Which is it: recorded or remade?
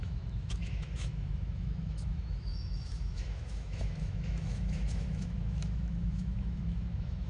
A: remade